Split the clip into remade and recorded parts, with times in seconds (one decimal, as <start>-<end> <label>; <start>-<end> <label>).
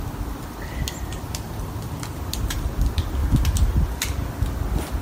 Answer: 0.0-5.0 recorded